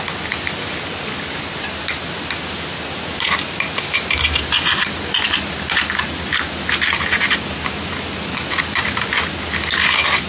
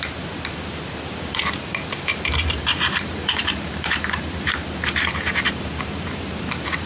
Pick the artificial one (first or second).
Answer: second